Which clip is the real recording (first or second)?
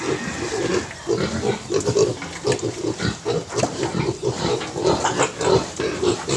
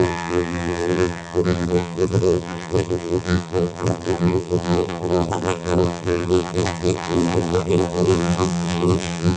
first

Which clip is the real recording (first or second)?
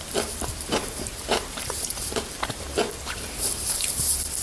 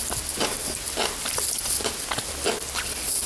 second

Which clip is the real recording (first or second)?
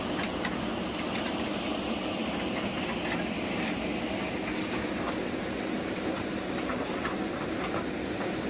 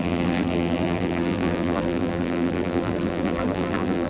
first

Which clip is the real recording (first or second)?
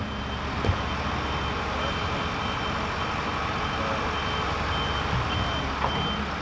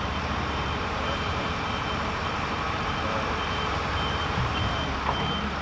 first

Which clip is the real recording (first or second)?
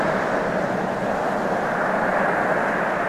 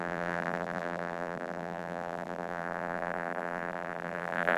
first